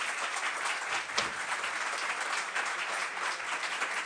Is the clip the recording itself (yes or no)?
yes